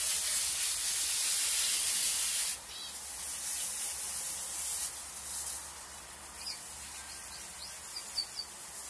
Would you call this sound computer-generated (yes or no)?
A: no